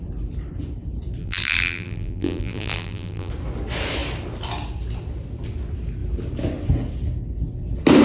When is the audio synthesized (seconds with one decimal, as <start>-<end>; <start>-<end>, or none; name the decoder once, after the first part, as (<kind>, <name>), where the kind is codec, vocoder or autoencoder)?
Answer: 1.2-3.3 (vocoder, BigVGAN v2)